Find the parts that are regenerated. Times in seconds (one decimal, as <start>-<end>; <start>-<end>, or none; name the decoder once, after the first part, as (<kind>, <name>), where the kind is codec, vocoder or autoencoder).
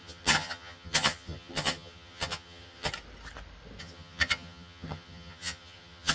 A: 0.0-2.9 (vocoder, HiFi-GAN); 3.8-6.1